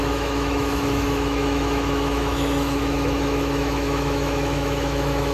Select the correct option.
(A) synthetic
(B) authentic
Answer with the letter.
A